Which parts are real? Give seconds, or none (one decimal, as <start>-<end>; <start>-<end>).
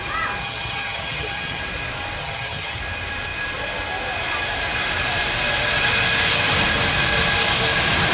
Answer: 0.0-0.4; 1.6-2.2; 2.8-8.1